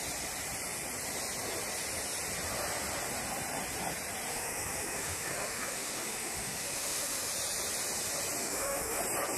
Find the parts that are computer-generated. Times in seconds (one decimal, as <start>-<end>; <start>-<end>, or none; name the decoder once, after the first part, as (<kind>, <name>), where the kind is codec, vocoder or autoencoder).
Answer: 4.3-7.3 (autoencoder, DAC-VAE); 8.4-9.0